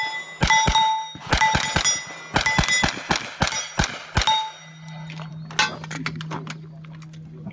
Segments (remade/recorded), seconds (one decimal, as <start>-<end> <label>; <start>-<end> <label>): 0.0-7.5 recorded